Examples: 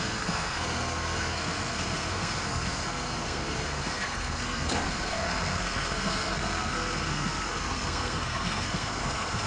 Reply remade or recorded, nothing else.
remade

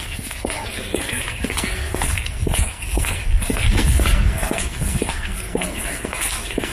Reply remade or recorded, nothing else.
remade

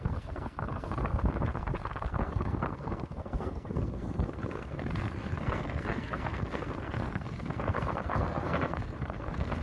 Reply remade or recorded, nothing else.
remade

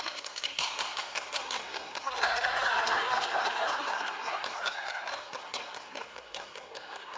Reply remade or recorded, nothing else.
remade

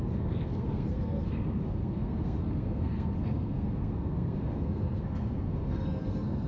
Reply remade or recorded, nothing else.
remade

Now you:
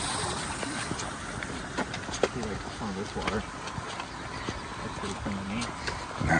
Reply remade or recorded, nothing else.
recorded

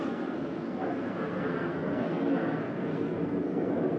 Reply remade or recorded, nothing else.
remade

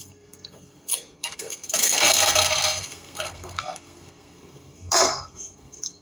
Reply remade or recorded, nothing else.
remade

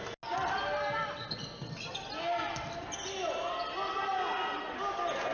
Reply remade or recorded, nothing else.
recorded